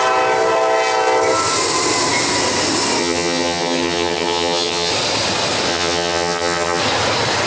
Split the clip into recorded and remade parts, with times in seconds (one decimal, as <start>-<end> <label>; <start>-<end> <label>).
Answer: 0.0-3.0 recorded; 3.0-4.9 remade; 4.9-5.7 recorded; 5.7-6.8 remade; 6.8-7.5 recorded